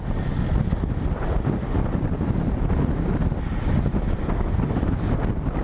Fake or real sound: real